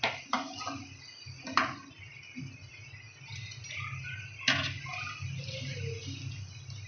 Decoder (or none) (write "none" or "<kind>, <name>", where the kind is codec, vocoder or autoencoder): none